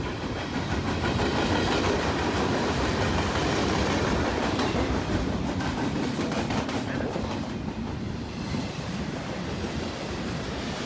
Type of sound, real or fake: fake